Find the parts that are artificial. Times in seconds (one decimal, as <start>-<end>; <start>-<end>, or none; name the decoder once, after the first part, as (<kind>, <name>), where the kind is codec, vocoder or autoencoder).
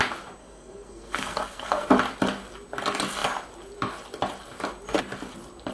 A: 0.4-1.9 (codec, SNAC)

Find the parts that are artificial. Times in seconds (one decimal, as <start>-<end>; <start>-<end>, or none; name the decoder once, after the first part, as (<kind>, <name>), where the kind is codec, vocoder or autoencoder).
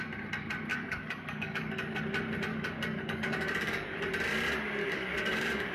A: 0.7-2.0 (codec, DAC); 2.5-4.0; 4.8-5.7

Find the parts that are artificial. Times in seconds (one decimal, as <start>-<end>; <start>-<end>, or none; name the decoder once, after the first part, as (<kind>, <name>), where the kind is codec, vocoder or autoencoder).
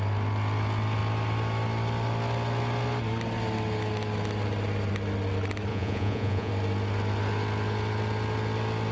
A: 5.7-6.5 (vocoder, Vocos)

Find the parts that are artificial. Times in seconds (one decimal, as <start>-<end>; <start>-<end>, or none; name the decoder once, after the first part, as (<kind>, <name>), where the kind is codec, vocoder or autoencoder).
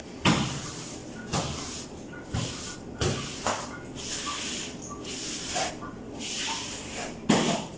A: none